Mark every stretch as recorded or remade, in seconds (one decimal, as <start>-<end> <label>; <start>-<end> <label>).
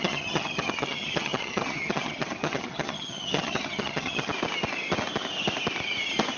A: 0.0-4.3 remade; 4.3-6.4 recorded